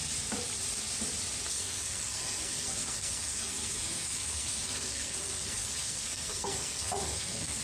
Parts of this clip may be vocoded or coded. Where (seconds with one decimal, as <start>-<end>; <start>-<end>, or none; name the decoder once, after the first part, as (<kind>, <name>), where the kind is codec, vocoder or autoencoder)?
1.5-7.6 (codec, SNAC)